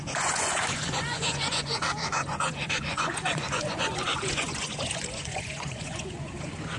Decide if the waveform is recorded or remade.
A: remade